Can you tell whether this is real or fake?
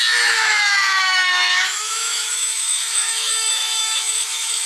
fake